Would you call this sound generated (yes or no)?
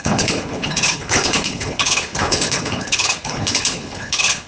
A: yes